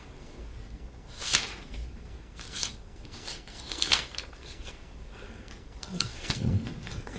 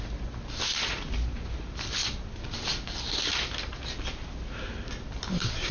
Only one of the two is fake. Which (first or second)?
first